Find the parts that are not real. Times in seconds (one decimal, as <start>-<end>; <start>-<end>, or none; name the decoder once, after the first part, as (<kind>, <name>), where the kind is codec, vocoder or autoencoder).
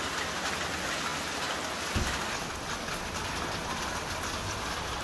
none